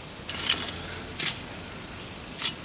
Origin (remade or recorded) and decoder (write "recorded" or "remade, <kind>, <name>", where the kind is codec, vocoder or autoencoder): recorded